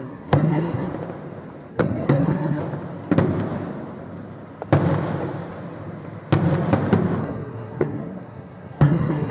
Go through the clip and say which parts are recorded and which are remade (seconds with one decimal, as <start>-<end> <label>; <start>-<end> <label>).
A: 0.0-0.9 remade; 0.9-1.7 recorded; 1.7-2.6 remade; 2.6-7.2 recorded; 7.2-9.3 remade